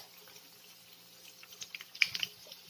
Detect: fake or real real